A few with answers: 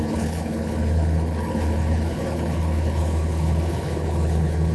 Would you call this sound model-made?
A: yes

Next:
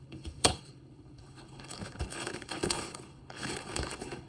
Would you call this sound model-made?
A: yes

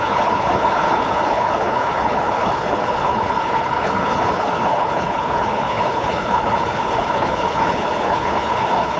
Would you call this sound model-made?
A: yes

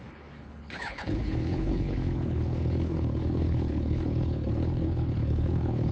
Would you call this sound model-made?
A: yes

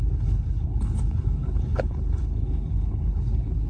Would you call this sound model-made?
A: yes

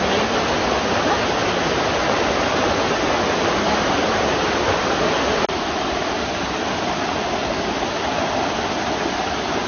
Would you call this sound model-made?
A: no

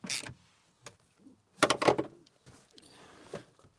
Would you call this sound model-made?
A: no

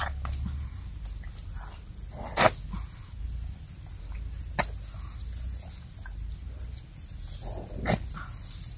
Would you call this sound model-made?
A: no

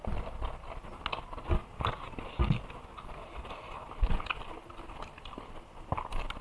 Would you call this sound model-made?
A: no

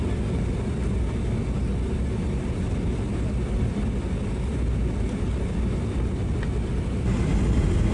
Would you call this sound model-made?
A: no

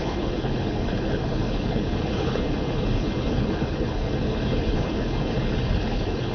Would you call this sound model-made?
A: yes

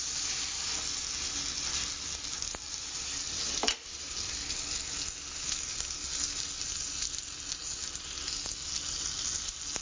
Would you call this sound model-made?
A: no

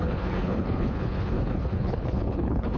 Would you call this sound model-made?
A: yes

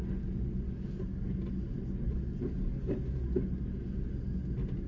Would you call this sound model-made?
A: no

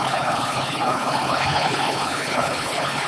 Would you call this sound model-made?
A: yes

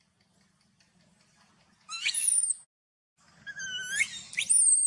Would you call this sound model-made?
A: no